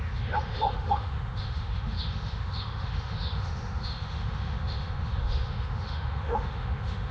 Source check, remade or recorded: remade